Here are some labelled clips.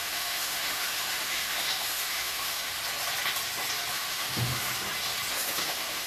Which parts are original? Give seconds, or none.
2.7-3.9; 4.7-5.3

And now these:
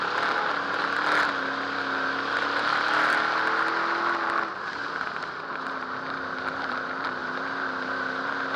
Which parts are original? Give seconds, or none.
0.0-8.6

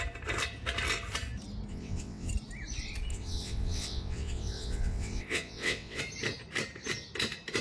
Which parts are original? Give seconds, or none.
0.0-1.7; 2.3-3.1; 6.0-7.6

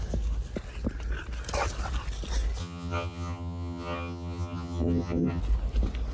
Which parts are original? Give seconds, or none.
0.0-2.6; 5.4-6.1

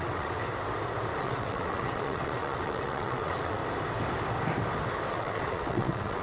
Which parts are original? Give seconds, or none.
0.4-1.2; 3.6-5.1

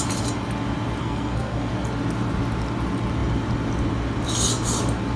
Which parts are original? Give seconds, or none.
0.0-1.0; 1.7-5.2

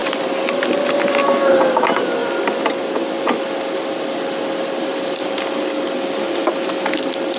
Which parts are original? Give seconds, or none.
0.0-7.4